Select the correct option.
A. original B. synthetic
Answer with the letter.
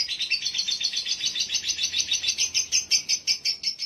A